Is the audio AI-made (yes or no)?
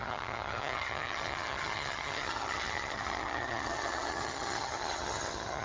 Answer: yes